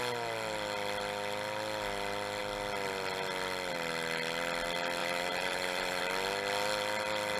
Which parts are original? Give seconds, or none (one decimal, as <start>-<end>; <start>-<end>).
0.0-5.0; 6.0-7.4